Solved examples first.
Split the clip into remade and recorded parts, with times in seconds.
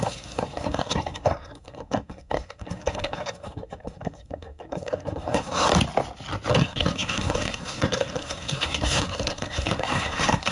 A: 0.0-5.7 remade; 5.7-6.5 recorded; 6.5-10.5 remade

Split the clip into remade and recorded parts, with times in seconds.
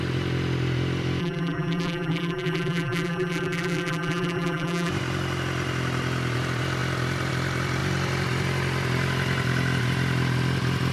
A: 0.0-1.2 recorded; 1.2-4.9 remade; 4.9-10.9 recorded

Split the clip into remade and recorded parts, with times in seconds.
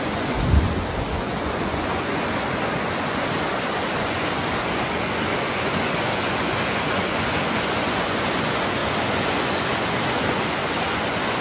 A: 0.0-11.4 remade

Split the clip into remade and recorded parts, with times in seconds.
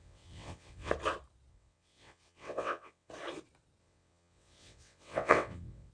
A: 0.0-0.9 remade; 0.9-1.5 recorded; 1.5-3.1 remade; 3.1-3.8 recorded; 3.8-5.9 remade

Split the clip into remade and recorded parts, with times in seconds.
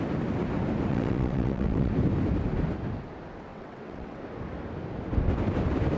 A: 0.0-0.9 recorded; 0.9-1.9 remade; 1.9-3.5 recorded; 3.5-4.2 remade; 4.2-6.0 recorded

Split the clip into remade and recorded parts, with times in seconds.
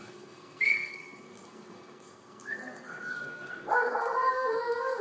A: 0.0-5.0 remade